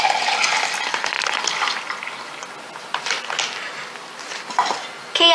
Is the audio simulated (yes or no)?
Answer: no